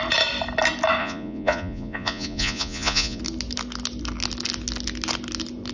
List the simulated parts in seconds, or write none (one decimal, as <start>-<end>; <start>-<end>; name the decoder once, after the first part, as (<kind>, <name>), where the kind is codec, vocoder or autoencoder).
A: 1.0-3.2 (vocoder, Vocos)